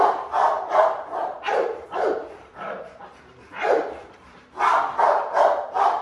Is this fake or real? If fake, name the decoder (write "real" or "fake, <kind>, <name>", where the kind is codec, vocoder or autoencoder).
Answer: fake, vocoder, BigVGAN v2